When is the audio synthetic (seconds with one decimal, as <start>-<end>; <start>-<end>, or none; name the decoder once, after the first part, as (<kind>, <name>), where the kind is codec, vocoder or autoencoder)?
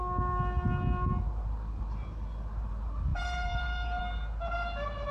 3.1-4.0 (vocoder, Vocos)